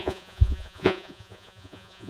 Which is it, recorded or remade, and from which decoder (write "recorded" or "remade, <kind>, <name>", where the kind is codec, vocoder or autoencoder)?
remade, vocoder, Vocos